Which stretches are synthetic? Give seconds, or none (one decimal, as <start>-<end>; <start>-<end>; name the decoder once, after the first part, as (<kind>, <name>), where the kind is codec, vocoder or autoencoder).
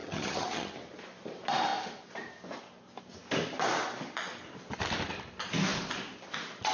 0.0-0.7 (vocoder, HiFi-GAN)